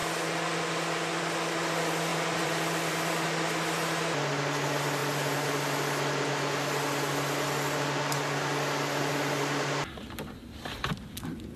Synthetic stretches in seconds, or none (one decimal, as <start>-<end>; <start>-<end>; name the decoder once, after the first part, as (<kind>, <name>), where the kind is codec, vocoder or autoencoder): 2.1-3.3 (vocoder, BigVGAN v2)